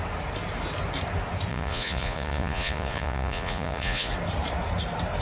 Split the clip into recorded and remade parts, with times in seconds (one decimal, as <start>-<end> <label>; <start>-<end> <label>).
0.0-1.5 recorded; 1.5-4.1 remade; 4.1-5.2 recorded